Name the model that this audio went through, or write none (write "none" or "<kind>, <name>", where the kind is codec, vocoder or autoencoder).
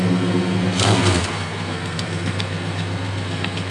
codec, SNAC